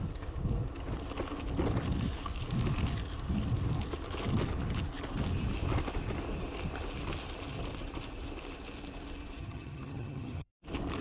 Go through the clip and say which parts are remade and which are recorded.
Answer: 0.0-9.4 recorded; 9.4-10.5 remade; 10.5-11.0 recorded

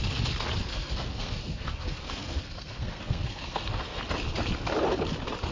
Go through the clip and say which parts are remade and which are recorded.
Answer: 0.0-0.7 recorded; 0.7-4.0 remade; 4.0-5.5 recorded